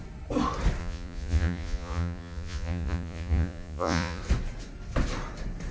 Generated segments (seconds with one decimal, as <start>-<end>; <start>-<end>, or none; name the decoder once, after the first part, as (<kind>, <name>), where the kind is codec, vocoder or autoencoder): 0.8-4.2 (vocoder, Vocos)